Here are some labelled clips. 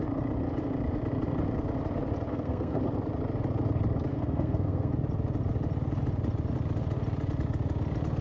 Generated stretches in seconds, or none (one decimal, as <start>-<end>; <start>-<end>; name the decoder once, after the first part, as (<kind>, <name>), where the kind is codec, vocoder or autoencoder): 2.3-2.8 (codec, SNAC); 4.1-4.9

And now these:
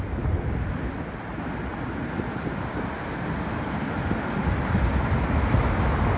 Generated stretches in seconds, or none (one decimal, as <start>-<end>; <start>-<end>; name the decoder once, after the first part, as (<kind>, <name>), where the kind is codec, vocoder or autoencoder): 1.7-2.9 (vocoder, BigVGAN v2)

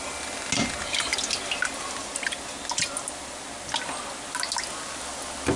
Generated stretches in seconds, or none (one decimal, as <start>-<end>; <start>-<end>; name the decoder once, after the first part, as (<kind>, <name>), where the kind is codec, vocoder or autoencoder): none

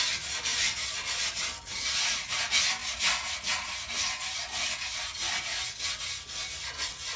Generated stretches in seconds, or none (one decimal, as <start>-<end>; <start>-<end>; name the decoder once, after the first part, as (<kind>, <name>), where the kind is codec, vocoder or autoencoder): none

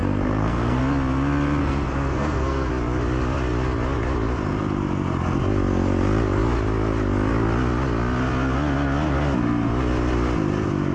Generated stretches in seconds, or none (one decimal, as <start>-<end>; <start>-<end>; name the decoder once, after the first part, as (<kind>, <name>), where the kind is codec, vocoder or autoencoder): 0.0-0.8 (codec, SNAC); 1.6-2.7

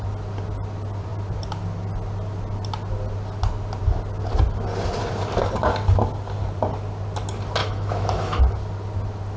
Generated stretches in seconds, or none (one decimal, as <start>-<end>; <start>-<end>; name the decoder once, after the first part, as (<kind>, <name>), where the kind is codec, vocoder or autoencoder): 7.6-8.4 (autoencoder, DAC-VAE)